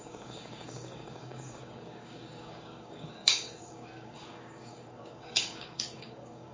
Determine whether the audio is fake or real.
fake